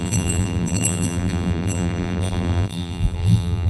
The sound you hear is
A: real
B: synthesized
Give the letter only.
B